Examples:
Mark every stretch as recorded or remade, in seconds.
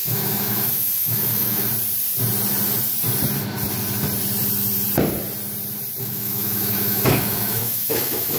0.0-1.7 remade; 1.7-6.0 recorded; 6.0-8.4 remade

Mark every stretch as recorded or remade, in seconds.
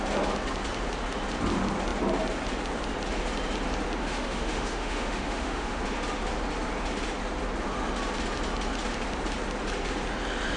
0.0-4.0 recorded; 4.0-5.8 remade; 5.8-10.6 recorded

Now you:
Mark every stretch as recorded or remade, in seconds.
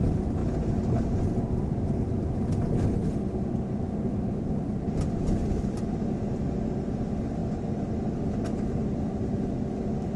0.0-10.2 recorded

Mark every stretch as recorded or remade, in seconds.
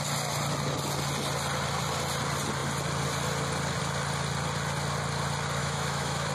0.0-5.6 recorded; 5.6-6.3 remade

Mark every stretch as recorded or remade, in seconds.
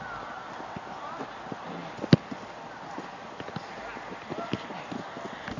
0.0-5.6 recorded